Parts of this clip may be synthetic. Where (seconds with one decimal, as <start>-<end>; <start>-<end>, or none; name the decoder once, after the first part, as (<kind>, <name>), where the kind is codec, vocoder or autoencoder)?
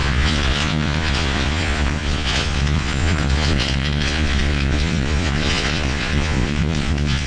0.0-7.3 (vocoder, Vocos)